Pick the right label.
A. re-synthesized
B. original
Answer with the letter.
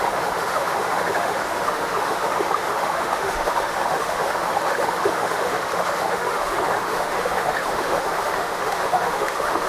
A